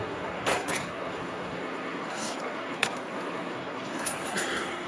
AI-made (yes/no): yes